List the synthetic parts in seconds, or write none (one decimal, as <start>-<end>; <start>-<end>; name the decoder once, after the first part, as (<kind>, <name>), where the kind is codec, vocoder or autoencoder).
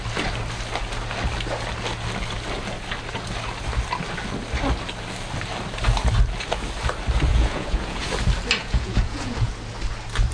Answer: 7.3-8.0 (vocoder, Vocos); 8.6-9.5